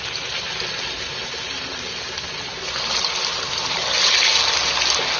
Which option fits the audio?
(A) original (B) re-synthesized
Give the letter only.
A